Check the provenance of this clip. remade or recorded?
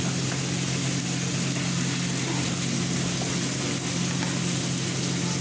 recorded